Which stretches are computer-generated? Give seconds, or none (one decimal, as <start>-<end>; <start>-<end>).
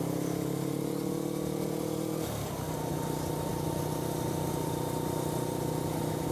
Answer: none